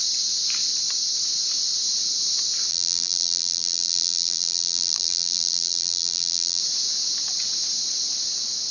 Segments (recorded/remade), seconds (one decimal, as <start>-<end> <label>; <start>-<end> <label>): 0.0-2.7 recorded; 2.7-6.6 remade; 6.6-8.7 recorded